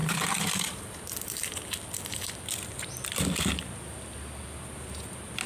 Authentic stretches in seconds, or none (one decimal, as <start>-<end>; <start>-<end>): 2.3-5.5